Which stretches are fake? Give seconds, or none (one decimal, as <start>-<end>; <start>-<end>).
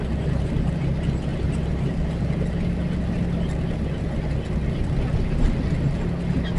none